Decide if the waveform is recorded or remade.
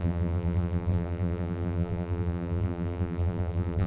remade